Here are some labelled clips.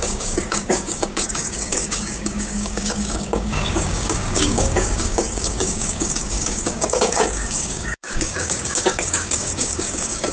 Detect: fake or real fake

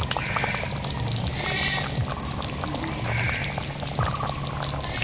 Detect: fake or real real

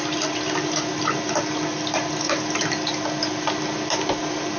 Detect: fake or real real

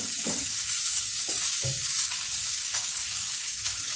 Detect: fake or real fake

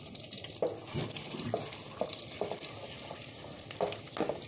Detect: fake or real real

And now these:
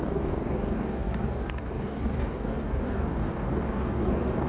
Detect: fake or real fake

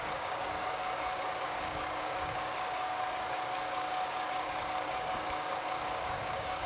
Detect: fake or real fake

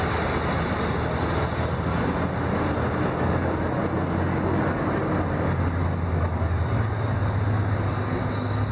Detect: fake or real real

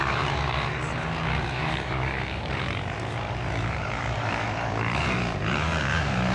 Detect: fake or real fake